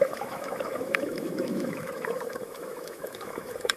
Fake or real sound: fake